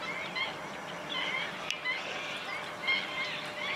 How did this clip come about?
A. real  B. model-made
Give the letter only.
A